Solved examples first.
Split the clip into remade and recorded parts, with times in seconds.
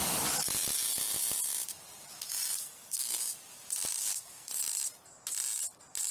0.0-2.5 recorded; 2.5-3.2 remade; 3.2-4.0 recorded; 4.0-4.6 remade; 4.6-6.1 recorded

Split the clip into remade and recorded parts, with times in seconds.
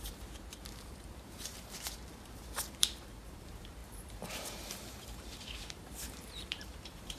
0.0-7.2 remade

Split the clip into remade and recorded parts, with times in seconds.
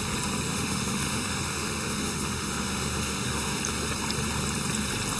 0.0-0.5 recorded; 0.5-3.6 remade; 3.6-5.2 recorded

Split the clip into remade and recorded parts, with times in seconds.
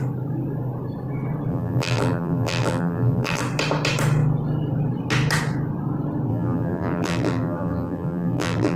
0.0-1.5 recorded; 1.5-3.4 remade; 3.4-6.3 recorded; 6.3-8.8 remade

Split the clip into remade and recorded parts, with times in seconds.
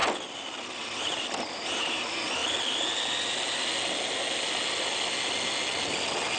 0.0-0.8 recorded; 0.8-2.4 remade; 2.4-6.4 recorded